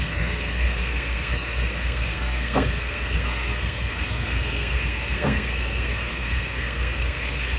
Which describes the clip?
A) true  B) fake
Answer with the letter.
B